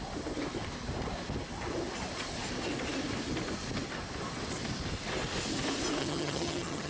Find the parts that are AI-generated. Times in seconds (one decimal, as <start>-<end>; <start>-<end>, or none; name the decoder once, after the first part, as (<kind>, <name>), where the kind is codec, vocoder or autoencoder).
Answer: 6.0-6.9 (vocoder, HiFi-GAN)